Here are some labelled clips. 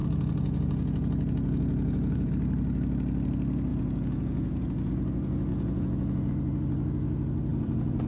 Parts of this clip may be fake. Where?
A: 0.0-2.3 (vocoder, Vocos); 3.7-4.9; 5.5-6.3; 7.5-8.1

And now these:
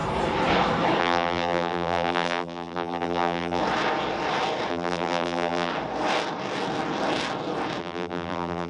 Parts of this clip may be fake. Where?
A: 1.0-3.6 (vocoder, BigVGAN v2); 4.7-5.7; 7.8-8.7

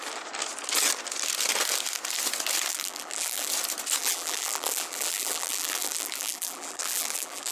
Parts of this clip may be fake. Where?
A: 2.7-3.5 (vocoder, BigVGAN v2); 4.0-7.5

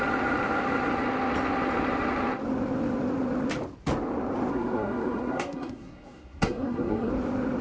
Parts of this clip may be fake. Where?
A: 4.5-7.1 (codec, SNAC)

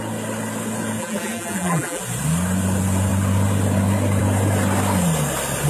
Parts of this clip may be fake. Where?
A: 1.0-2.0 (vocoder, BigVGAN v2)